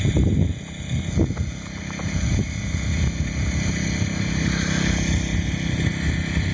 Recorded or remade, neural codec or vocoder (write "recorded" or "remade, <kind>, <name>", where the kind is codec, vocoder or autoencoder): recorded